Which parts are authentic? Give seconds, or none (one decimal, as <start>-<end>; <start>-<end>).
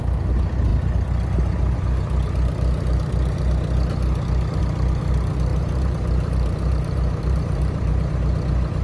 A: 0.0-5.5; 8.1-8.8